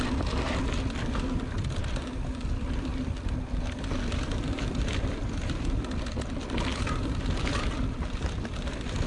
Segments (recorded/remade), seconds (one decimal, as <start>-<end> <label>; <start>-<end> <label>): 0.0-9.1 recorded